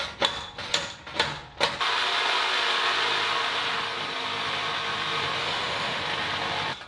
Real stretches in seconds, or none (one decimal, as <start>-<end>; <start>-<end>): 0.0-5.4; 6.0-6.9